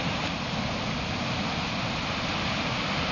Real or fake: real